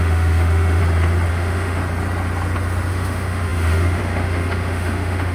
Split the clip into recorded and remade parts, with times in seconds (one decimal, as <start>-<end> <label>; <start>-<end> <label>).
0.0-0.8 remade; 0.8-1.3 recorded; 1.3-1.8 remade; 1.8-2.9 recorded; 2.9-5.3 remade